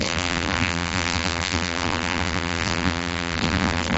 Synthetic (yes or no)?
yes